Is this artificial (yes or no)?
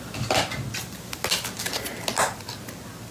no